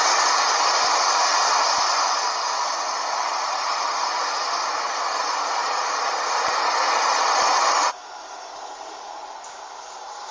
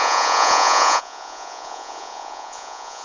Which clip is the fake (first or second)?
second